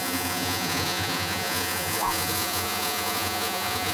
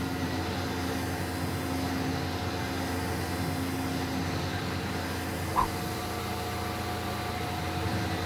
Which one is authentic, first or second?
second